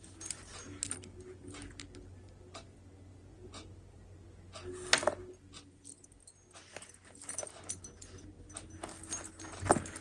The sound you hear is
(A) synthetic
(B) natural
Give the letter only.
B